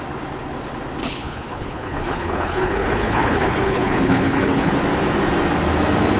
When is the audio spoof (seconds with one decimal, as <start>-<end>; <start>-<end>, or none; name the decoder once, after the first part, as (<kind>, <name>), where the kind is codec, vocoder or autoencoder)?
1.0-4.7 (codec, HILCodec)

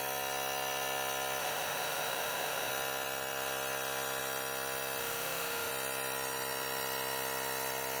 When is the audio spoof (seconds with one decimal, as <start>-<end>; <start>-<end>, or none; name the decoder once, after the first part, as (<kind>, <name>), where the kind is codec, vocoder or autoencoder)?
1.4-2.7 (autoencoder, DAC-VAE); 5.0-5.7

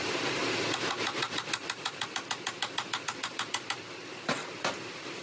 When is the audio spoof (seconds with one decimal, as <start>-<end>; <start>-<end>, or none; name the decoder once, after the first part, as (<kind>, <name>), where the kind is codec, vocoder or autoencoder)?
none

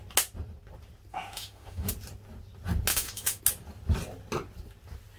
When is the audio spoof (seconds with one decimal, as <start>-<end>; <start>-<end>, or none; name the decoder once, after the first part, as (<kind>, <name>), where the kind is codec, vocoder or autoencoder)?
1.1-1.9 (autoencoder, DAC-VAE); 2.9-3.4

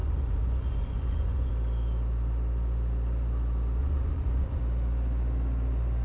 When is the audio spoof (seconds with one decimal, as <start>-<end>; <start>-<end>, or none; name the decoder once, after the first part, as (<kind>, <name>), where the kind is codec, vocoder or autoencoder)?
0.0-1.5 (vocoder, Vocos); 3.8-4.6

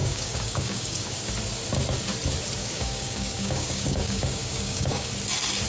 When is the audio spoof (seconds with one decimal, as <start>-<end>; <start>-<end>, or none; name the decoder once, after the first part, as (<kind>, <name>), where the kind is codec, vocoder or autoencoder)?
0.0-1.3 (codec, DAC); 2.6-5.1

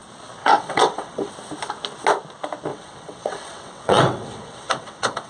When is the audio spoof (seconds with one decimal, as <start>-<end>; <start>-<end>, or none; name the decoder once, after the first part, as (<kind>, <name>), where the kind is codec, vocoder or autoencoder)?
0.4-1.3 (vocoder, WaveNeXt); 2.7-5.3

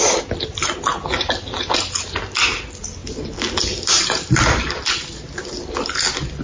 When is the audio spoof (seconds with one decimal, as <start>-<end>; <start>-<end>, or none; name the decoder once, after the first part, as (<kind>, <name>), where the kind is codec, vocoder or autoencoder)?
none